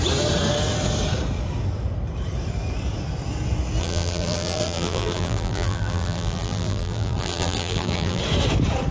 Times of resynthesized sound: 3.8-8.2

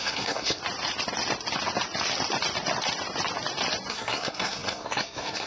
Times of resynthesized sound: 0.0-0.6; 3.9-5.5

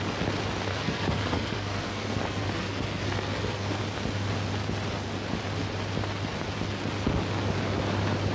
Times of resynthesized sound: 0.7-3.8